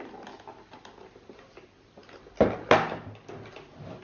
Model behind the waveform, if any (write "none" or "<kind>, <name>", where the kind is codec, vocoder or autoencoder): none